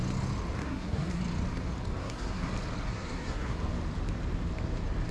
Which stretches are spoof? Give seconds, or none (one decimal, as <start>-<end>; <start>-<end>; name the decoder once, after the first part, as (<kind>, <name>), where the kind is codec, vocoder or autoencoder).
0.6-1.2 (codec, SNAC); 2.0-2.5; 2.9-3.6